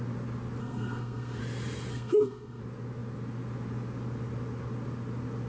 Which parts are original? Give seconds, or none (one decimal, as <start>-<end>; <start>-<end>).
0.0-0.6; 1.4-1.9; 2.6-5.5